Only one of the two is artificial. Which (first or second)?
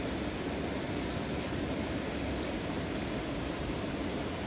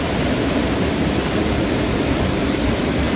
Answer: second